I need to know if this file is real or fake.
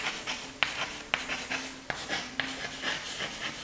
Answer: real